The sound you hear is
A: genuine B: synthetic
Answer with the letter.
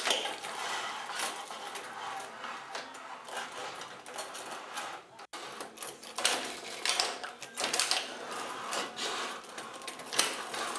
A